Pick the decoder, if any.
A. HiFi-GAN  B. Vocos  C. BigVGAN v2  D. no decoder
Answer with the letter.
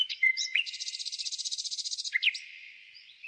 B